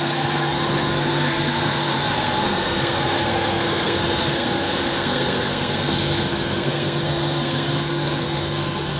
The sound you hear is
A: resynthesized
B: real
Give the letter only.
A